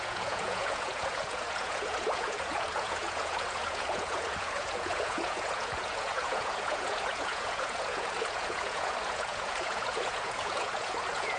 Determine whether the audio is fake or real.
fake